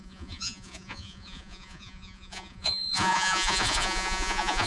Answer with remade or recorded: remade